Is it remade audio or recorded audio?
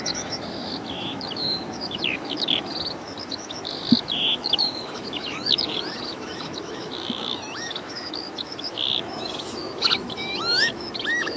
remade